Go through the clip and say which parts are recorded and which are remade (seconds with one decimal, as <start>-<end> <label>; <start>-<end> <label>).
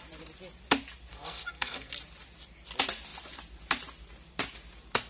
0.0-1.1 recorded; 1.1-1.9 remade; 1.9-5.1 recorded